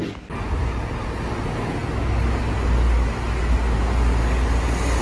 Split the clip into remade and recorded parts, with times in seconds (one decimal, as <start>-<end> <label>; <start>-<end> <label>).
0.0-5.0 recorded